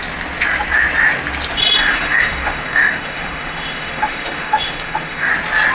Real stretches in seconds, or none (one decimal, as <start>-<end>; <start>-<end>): 0.0-1.9; 5.3-5.7